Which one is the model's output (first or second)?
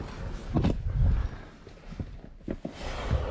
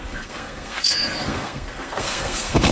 second